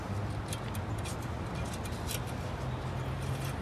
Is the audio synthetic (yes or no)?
no